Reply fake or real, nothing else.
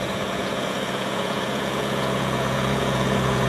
fake